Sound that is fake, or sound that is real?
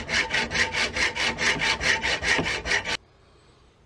real